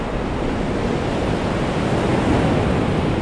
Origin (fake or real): real